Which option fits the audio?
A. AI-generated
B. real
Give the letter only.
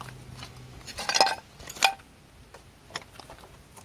B